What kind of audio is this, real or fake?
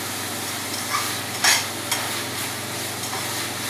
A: fake